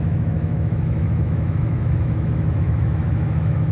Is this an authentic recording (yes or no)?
no